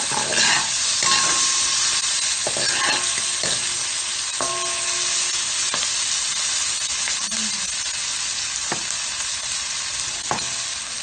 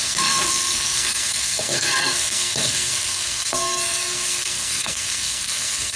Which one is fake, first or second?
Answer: second